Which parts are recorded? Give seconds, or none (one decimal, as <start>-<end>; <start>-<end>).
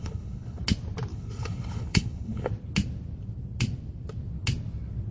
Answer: 0.6-1.1; 2.5-5.1